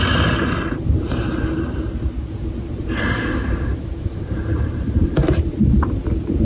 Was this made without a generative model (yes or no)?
no